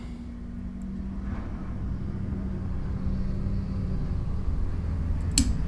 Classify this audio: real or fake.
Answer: real